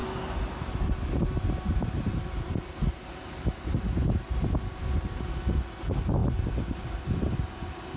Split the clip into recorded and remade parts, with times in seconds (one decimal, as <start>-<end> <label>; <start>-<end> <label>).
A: 0.0-8.0 recorded